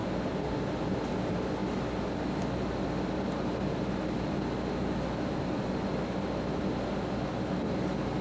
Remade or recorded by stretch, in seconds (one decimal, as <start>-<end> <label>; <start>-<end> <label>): 0.0-8.2 recorded

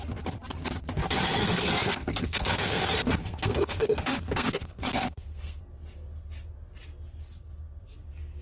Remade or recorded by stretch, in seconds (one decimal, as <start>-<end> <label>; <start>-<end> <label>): 0.0-1.4 recorded; 1.4-2.8 remade; 2.8-3.2 recorded; 3.2-5.6 remade; 5.6-8.4 recorded

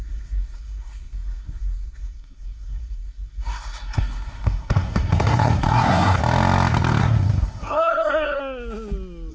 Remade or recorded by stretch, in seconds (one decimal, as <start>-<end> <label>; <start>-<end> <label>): 0.0-6.2 remade; 6.2-7.0 recorded; 7.0-8.4 remade; 8.4-9.3 recorded

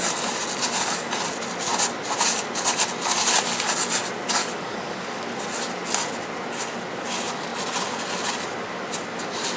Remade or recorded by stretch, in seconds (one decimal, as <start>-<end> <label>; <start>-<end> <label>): 0.0-4.4 recorded; 4.4-5.2 remade; 5.2-9.6 recorded

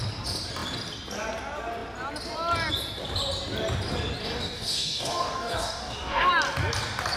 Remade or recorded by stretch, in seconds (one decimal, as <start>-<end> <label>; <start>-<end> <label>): 0.0-4.2 recorded; 4.2-6.3 remade; 6.3-7.2 recorded

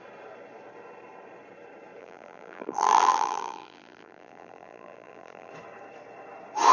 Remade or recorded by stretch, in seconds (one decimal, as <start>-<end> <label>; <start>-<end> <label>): 0.0-2.0 recorded; 2.0-5.5 remade; 5.5-6.7 recorded

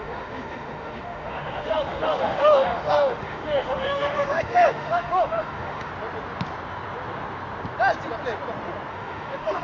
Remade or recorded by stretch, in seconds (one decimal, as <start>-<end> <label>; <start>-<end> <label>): 0.0-5.9 remade; 5.9-8.9 recorded; 8.9-9.6 remade

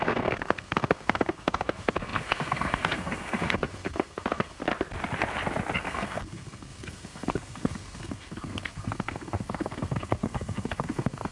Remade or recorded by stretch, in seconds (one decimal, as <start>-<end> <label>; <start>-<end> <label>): 0.0-4.6 remade; 4.6-5.8 recorded; 5.8-11.3 remade